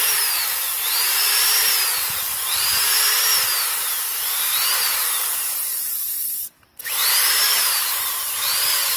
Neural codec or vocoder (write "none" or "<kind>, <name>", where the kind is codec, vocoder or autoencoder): vocoder, BigVGAN v2